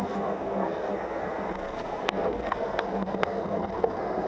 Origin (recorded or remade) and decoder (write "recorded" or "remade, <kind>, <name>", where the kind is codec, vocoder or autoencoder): remade, codec, SNAC